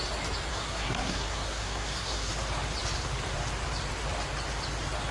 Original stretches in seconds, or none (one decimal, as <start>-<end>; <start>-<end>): 0.0-0.5; 2.3-5.1